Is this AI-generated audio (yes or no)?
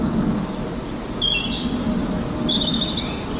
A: no